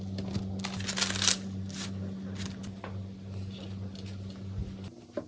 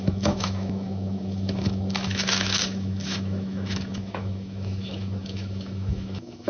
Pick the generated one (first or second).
second